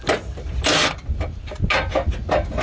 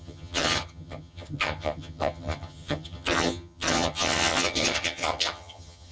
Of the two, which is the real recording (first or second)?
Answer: first